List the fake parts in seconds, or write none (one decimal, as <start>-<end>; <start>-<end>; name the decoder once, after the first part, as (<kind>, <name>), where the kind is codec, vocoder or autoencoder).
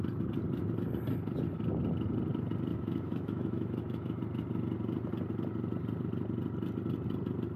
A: 2.7-4.2 (autoencoder, DAC-VAE)